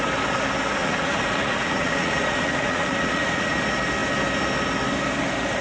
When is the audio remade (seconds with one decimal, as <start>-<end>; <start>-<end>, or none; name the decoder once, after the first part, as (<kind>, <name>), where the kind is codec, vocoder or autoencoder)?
0.8-3.6 (vocoder, Vocos)